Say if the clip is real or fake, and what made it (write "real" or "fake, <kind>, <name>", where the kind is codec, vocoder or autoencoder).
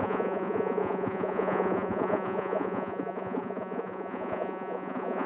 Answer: fake, vocoder, Vocos